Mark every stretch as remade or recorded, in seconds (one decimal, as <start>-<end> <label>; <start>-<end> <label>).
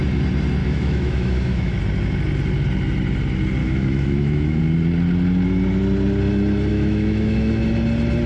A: 0.0-0.6 recorded; 0.6-1.8 remade; 1.8-3.6 recorded; 3.6-4.6 remade; 4.6-6.7 recorded; 6.7-7.5 remade; 7.5-8.3 recorded